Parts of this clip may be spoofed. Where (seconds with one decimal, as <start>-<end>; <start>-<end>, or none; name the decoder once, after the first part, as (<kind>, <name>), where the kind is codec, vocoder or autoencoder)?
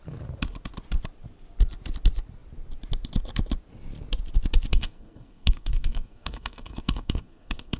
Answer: 4.7-7.8 (codec, SNAC)